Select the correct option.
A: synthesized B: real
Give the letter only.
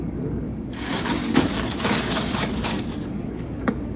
A